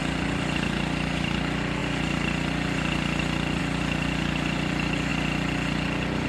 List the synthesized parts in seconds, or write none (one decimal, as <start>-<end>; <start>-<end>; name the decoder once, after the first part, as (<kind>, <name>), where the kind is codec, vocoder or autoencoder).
none